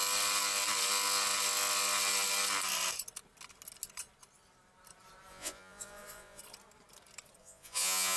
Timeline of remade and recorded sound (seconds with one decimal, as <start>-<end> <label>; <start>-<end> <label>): 0.0-5.3 recorded; 5.3-6.4 remade; 6.4-7.4 recorded; 7.4-8.2 remade